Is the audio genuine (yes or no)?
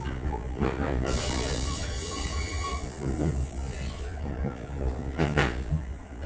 no